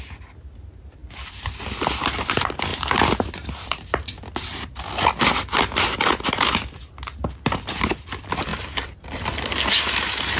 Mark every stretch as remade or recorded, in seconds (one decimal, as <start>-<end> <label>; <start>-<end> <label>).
0.0-10.4 recorded